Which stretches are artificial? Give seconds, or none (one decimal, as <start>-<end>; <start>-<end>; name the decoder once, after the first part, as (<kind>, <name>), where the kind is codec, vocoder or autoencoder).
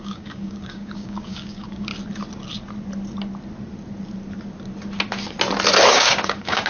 0.0-1.9 (codec, DAC); 5.9-6.7